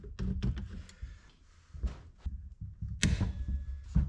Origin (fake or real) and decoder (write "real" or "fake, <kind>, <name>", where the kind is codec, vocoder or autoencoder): real